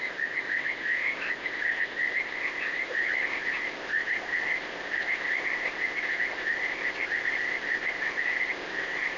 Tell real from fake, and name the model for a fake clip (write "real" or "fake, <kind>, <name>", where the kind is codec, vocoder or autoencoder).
fake, codec, ZipCodec